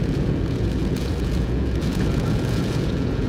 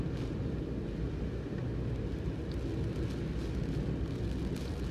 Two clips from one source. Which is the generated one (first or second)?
first